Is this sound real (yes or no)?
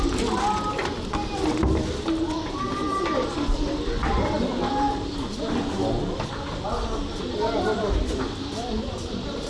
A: yes